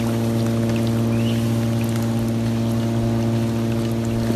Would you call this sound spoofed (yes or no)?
no